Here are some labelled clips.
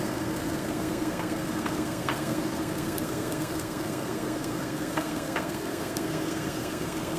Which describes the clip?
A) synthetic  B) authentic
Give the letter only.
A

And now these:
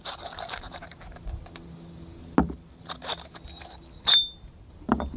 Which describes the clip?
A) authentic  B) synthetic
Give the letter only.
A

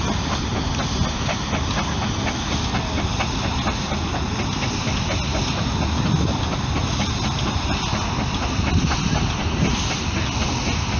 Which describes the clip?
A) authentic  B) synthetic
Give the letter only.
A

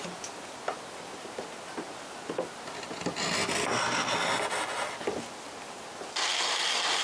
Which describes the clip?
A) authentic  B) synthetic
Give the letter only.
A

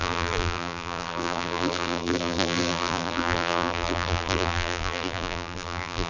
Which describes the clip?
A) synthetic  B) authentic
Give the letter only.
A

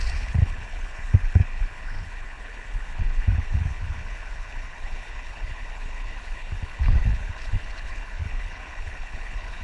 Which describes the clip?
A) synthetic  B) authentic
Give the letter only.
A